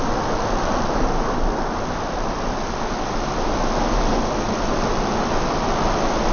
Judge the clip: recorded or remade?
recorded